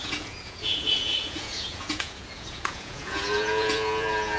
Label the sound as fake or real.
fake